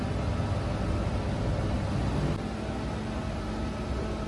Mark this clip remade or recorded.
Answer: recorded